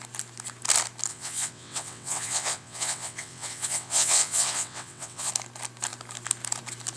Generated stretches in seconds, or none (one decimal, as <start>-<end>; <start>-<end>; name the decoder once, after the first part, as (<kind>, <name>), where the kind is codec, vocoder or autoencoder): 1.1-5.3 (vocoder, WaveNeXt)